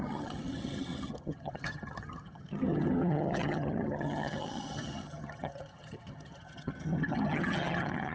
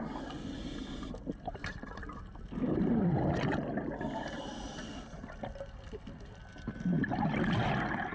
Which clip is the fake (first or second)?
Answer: first